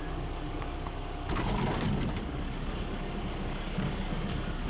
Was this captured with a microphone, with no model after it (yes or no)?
no